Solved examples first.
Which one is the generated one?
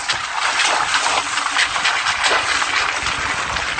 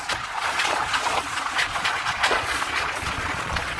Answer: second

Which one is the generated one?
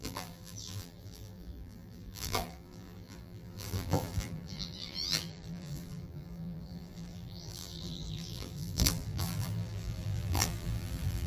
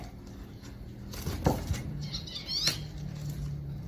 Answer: first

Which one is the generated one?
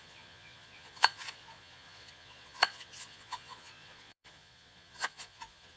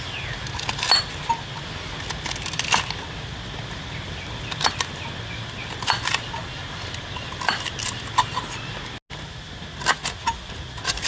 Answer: first